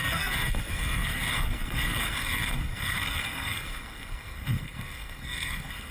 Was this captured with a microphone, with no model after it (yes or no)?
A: no